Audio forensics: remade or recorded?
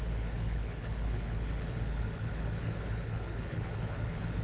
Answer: remade